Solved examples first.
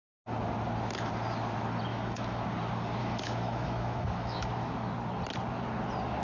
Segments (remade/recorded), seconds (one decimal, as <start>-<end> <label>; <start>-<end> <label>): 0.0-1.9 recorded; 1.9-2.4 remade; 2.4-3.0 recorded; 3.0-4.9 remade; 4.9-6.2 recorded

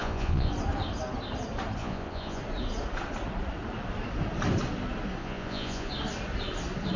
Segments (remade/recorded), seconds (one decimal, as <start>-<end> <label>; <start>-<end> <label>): 0.0-0.5 remade; 0.5-1.8 recorded; 1.8-2.4 remade; 2.4-5.2 recorded; 5.2-5.9 remade; 5.9-7.0 recorded

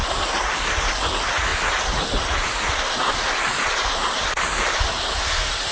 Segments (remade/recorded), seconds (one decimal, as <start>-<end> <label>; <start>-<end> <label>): 0.0-5.7 recorded